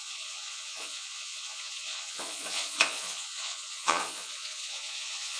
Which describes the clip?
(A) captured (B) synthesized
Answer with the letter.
B